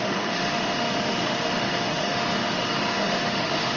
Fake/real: fake